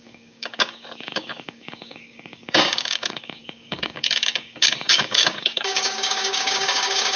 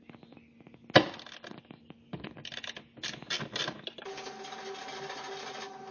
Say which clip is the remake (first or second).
first